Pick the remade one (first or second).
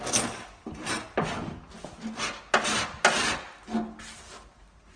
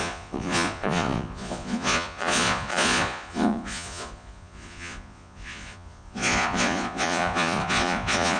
second